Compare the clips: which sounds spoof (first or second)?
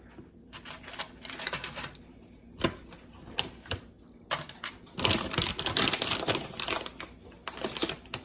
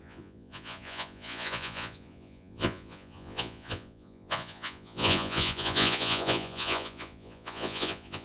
second